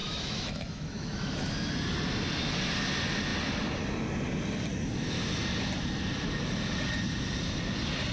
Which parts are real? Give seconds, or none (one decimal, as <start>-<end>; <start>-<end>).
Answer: 1.5-8.1